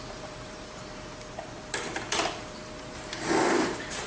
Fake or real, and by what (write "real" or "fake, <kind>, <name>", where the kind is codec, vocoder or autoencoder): fake, vocoder, BigVGAN v2